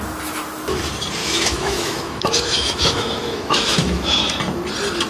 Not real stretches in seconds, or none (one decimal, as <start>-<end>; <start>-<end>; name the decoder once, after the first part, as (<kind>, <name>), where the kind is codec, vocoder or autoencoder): 1.2-4.3 (autoencoder, DAC-VAE)